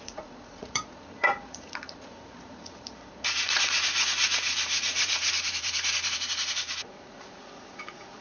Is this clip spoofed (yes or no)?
yes